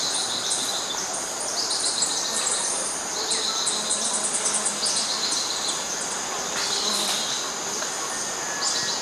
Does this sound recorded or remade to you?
recorded